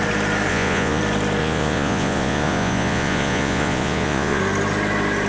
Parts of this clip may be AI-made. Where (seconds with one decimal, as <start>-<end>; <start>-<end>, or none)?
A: 0.5-1.0; 1.4-4.4